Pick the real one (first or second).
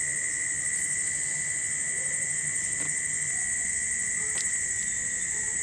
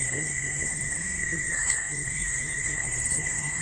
first